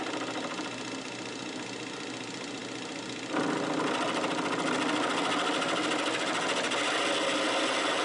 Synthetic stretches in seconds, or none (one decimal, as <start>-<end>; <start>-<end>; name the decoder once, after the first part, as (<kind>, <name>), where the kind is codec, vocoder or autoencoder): none